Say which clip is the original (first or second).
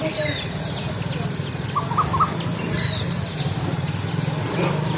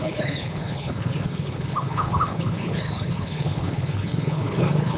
first